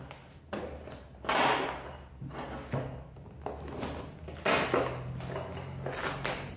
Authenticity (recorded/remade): recorded